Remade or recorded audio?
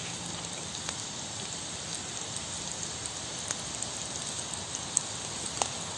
recorded